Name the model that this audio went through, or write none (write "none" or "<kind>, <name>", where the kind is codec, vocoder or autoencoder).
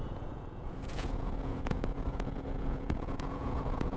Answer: vocoder, Vocos